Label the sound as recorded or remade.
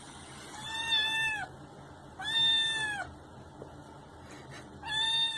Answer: recorded